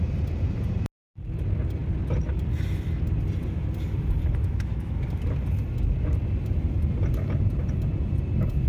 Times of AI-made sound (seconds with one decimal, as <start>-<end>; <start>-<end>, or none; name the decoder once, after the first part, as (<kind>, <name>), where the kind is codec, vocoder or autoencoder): 4.4-5.0 (autoencoder, DAC-VAE)

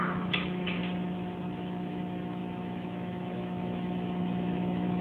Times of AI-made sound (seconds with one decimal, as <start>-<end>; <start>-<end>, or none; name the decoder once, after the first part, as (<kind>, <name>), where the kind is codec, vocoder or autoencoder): 0.0-0.8 (autoencoder, DAC-VAE); 1.6-5.0

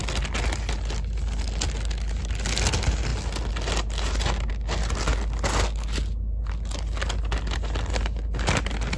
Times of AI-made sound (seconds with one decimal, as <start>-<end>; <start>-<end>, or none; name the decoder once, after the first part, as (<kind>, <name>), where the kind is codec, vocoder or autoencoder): none

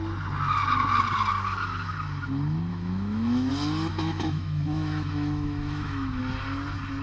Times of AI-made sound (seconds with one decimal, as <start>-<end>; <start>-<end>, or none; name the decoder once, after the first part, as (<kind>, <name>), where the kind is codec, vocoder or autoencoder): 2.7-3.5 (autoencoder, DAC-VAE); 3.9-6.2